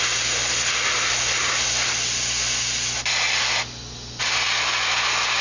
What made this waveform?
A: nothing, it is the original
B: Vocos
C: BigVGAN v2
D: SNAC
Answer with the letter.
A